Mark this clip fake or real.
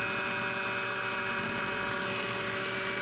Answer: real